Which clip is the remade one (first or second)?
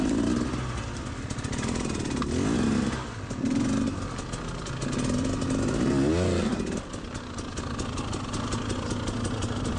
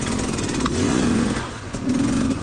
second